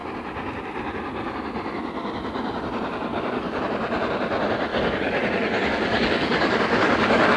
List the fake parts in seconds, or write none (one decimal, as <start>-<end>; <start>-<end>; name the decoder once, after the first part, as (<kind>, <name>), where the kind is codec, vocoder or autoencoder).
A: 3.1-3.6 (codec, DAC); 4.7-7.4